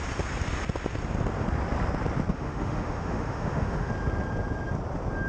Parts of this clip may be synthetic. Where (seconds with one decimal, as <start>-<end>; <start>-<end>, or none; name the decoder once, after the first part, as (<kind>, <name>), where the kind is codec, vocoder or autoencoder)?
2.3-3.9 (autoencoder, DAC-VAE)